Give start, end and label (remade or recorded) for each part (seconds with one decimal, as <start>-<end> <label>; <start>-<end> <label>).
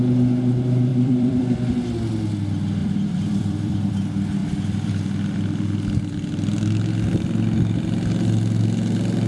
0.0-0.9 recorded; 0.9-1.7 remade; 1.7-2.8 recorded; 2.8-3.9 remade; 3.9-4.4 recorded; 4.4-4.9 remade; 4.9-9.3 recorded